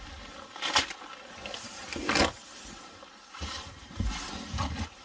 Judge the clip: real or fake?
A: real